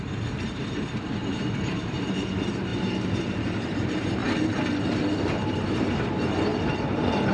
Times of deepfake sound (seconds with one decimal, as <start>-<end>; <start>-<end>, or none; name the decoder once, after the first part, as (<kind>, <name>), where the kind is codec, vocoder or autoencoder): 0.0-4.2 (vocoder, BigVGAN v2); 5.2-7.3